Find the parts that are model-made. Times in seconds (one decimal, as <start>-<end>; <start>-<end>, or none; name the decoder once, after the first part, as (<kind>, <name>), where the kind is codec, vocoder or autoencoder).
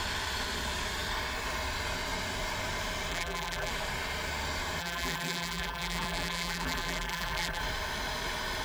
3.1-3.7 (vocoder, BigVGAN v2); 4.8-7.6